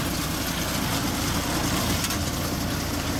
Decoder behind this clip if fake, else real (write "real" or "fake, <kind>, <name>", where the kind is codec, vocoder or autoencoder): real